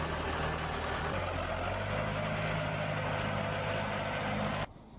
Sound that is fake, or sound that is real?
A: real